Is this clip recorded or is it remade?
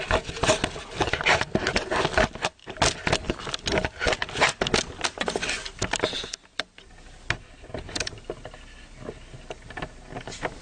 recorded